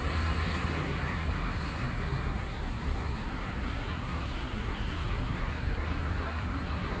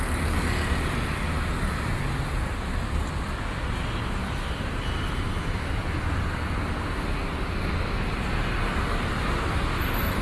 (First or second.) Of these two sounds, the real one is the second